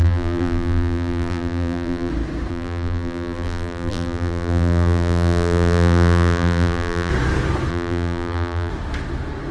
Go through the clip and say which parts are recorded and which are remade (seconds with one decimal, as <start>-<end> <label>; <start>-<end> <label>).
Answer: 0.0-2.1 remade; 2.1-2.5 recorded; 2.5-7.1 remade; 7.1-7.7 recorded; 7.7-8.7 remade; 8.7-9.5 recorded